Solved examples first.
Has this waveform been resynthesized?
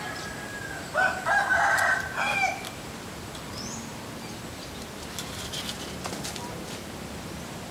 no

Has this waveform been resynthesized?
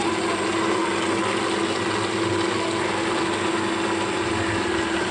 no